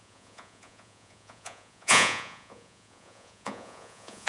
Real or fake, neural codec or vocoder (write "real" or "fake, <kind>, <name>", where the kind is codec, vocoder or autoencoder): fake, vocoder, Vocos